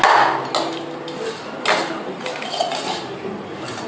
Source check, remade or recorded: recorded